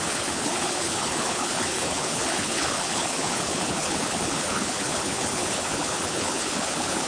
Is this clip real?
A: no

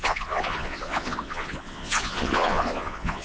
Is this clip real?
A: no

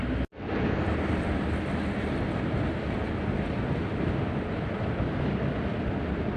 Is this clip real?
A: yes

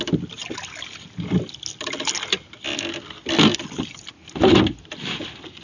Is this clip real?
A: yes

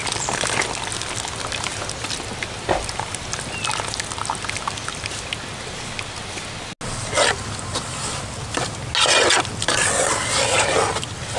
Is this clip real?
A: yes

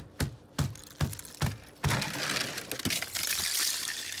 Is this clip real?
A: yes